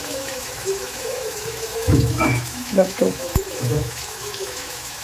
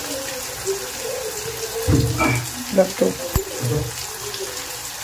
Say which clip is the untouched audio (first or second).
second